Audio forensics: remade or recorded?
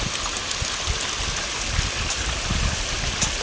recorded